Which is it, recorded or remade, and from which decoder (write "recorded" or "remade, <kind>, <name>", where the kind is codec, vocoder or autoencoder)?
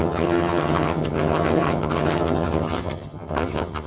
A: remade, vocoder, HiFi-GAN